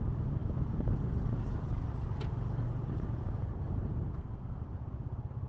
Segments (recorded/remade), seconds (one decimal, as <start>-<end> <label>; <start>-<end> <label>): 0.0-4.1 recorded; 4.1-4.6 remade; 4.6-5.5 recorded